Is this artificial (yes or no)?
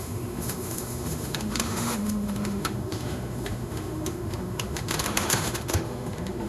yes